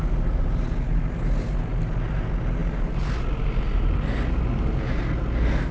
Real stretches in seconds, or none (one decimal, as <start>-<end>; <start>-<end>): 0.0-5.7